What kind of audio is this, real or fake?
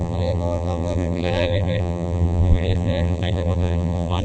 fake